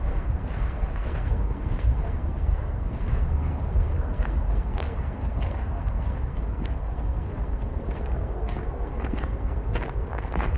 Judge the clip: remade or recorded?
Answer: remade